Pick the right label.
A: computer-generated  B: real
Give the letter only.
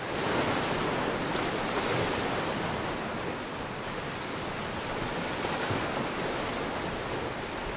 B